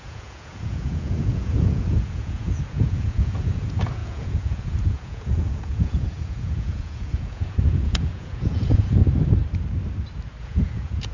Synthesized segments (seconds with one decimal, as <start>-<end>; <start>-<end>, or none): 0.0-9.0; 10.4-11.1